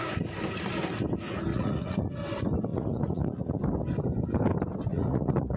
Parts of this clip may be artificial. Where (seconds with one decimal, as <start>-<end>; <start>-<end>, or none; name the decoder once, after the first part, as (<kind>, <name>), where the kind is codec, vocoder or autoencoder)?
1.5-2.1 (vocoder, Vocos); 2.7-3.6; 4.9-5.6